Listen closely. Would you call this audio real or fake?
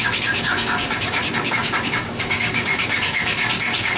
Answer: fake